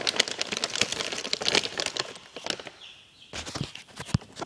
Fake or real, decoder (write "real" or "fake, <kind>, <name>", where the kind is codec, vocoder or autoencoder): real